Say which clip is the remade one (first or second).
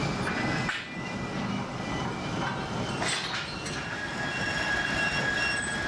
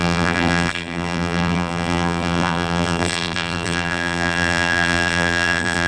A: second